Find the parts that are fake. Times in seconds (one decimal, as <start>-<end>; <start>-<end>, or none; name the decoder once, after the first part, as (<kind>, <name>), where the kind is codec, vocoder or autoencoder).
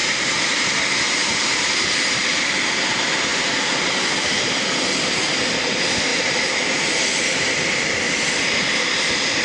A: 0.0-0.7 (vocoder, BigVGAN v2); 1.2-2.7